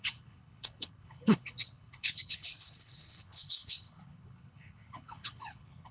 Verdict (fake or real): fake